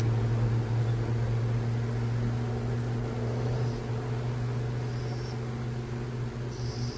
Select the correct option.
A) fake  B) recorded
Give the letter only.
B